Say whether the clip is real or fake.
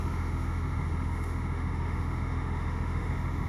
fake